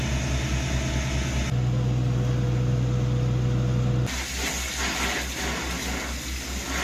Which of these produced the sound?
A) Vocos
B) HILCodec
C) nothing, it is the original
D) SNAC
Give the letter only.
C